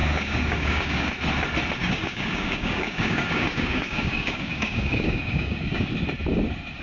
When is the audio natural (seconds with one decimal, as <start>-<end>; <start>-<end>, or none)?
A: 1.1-1.8; 5.9-6.8